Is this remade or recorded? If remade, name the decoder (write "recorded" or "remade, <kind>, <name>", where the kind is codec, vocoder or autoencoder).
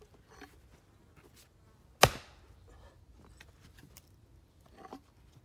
recorded